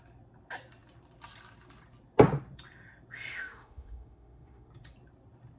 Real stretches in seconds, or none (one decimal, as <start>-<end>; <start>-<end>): 0.0-3.3; 4.7-5.6